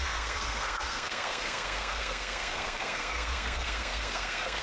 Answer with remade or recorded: remade